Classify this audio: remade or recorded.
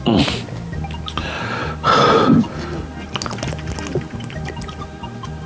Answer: recorded